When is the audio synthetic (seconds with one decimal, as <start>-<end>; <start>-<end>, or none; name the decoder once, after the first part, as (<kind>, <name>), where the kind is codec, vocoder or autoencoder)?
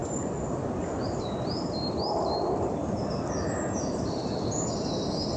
none